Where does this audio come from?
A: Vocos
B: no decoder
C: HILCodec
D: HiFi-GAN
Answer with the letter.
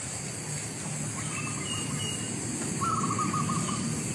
B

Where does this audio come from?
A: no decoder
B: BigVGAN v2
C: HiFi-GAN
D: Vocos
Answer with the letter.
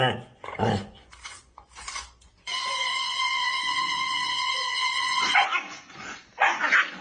D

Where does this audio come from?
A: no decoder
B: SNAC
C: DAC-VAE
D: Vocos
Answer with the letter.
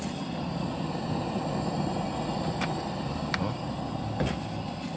A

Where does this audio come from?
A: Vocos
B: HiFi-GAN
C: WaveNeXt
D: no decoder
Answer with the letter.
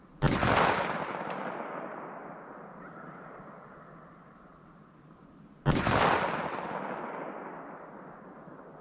D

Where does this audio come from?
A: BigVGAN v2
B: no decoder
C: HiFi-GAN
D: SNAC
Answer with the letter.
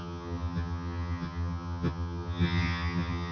C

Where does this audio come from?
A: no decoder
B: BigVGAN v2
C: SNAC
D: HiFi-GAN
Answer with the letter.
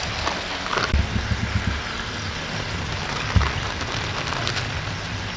A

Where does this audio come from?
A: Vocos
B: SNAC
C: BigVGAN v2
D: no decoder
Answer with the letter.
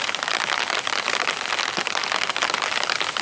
D